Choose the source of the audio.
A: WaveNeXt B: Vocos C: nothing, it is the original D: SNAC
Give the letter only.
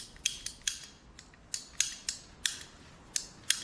C